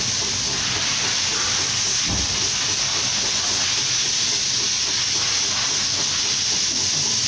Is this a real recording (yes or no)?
yes